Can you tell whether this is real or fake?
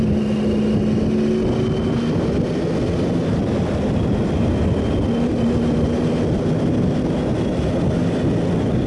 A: real